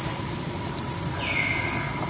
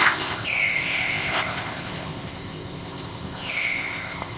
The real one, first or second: first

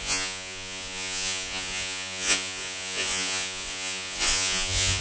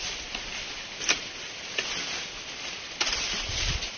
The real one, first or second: second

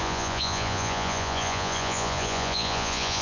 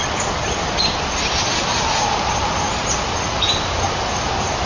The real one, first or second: second